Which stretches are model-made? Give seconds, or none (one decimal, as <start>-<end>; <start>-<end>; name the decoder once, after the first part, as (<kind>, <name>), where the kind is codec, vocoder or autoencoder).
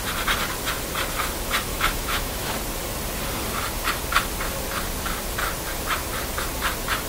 1.7-2.5 (autoencoder, DAC-VAE)